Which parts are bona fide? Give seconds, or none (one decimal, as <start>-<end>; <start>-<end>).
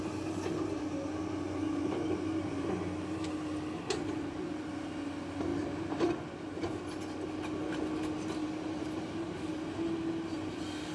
0.0-5.5; 6.1-8.4; 9.6-10.9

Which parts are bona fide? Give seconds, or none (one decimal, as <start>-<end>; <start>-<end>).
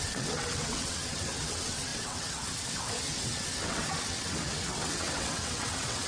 none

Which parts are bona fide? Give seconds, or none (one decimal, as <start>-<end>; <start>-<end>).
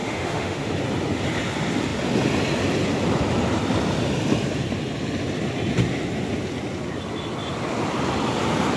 0.7-8.8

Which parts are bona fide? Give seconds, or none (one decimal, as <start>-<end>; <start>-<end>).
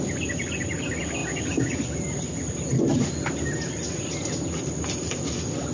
0.0-5.7